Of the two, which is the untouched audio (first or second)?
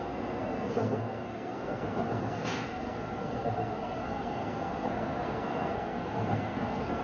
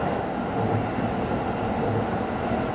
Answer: second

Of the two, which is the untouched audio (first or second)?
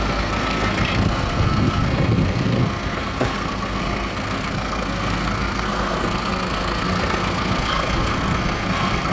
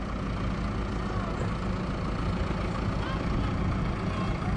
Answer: second